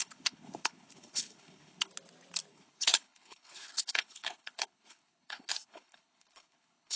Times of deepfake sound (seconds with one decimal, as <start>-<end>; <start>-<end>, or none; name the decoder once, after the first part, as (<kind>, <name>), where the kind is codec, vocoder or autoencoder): 0.0-1.9 (codec, HILCodec); 2.5-7.0